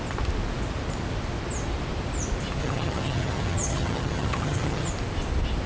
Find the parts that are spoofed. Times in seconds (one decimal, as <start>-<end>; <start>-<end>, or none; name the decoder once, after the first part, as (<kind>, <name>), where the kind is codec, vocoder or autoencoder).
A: 2.6-4.9 (vocoder, HiFi-GAN)

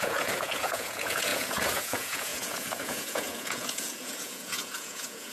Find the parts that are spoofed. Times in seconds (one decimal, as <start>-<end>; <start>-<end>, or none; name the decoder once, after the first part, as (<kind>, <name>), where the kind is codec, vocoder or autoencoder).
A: 0.0-5.3 (vocoder, Vocos)

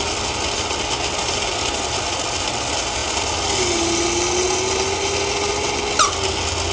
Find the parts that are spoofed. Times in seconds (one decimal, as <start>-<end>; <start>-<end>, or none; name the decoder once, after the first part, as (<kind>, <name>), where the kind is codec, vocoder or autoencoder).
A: none